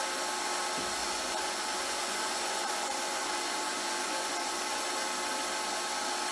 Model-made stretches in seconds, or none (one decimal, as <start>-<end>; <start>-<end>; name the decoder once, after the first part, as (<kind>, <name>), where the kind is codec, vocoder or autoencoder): 1.0-4.8 (vocoder, Vocos)